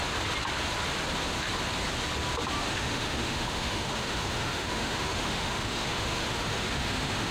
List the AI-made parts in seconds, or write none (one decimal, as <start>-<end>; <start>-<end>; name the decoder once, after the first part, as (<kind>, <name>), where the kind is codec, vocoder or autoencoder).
2.6-7.3 (autoencoder, DAC-VAE)